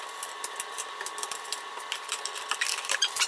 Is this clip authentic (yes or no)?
no